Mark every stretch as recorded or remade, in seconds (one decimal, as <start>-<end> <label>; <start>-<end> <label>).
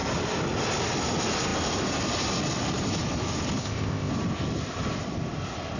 0.0-3.6 recorded; 3.6-4.1 remade; 4.1-5.8 recorded